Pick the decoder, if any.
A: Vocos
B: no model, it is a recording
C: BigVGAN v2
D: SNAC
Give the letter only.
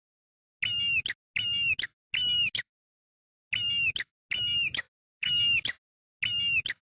B